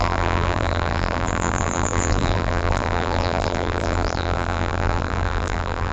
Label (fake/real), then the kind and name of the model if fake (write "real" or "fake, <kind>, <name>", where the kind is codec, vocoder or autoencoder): fake, vocoder, BigVGAN v2